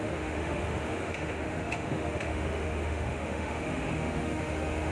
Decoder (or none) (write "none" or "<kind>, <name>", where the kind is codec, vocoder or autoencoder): autoencoder, DAC-VAE